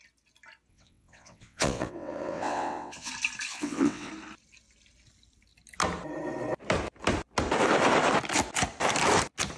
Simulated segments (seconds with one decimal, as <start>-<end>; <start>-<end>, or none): 0.7-3.1; 3.5-4.1